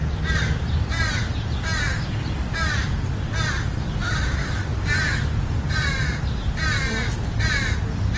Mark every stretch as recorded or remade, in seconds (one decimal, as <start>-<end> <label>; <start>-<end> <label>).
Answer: 0.0-4.7 recorded; 4.7-5.7 remade; 5.7-8.2 recorded